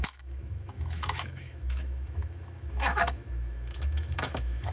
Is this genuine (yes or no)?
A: no